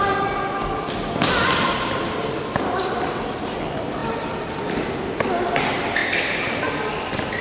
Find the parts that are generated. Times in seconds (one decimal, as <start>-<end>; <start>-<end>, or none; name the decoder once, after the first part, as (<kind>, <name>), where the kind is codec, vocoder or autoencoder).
none

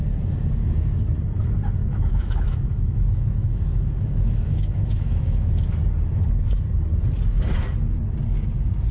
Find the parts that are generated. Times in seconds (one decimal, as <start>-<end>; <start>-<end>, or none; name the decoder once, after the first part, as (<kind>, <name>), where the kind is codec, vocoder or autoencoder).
1.8-5.8 (autoencoder, DAC-VAE)

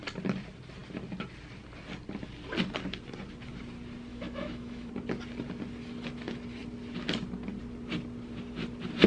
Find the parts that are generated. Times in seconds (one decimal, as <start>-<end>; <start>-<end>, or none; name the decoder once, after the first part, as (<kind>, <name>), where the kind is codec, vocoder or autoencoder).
4.1-4.9 (autoencoder, DAC-VAE)

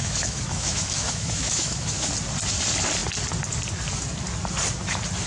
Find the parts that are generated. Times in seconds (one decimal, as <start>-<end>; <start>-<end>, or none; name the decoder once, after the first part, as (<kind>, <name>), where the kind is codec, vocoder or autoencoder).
0.0-2.1 (autoencoder, DAC-VAE)

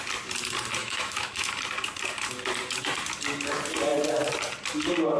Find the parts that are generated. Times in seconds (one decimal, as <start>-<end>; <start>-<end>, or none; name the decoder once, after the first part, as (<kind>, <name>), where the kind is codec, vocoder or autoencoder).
0.8-1.5 (autoencoder, DAC-VAE)